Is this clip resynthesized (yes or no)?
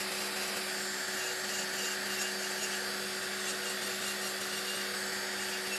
no